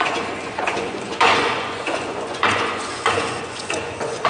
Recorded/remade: remade